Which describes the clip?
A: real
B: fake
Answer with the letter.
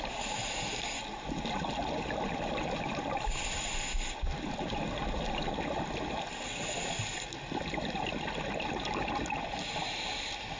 A